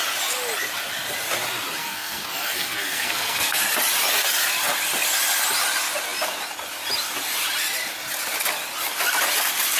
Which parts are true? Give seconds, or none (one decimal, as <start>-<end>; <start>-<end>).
0.0-1.8; 3.6-9.8